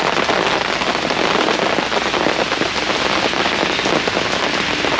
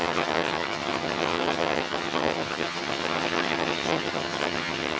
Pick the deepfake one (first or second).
second